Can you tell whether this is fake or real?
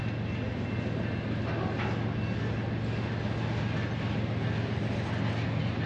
real